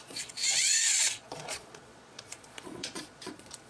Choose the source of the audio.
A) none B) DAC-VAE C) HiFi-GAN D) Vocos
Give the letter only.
D